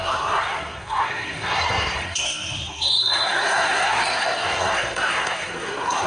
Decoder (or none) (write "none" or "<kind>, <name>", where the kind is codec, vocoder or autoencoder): codec, SNAC